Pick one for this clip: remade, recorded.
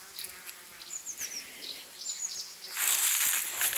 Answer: recorded